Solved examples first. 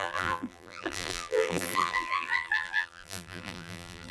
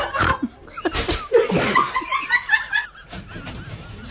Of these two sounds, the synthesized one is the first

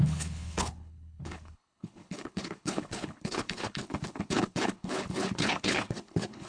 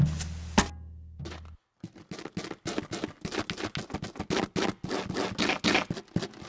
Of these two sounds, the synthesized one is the first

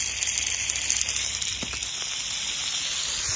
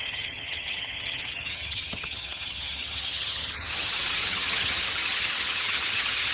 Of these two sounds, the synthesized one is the second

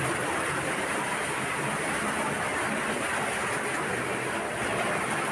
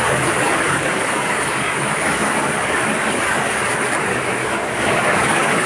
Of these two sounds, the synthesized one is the second